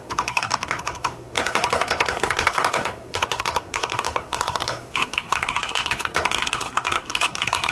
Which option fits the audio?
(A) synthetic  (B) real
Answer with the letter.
A